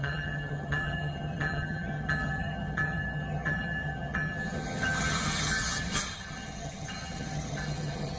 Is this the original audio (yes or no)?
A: no